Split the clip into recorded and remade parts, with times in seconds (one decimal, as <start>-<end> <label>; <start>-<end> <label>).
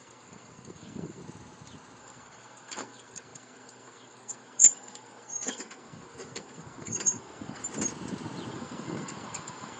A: 0.0-1.2 remade; 1.2-2.0 recorded; 2.0-7.6 remade; 7.6-8.5 recorded; 8.5-9.8 remade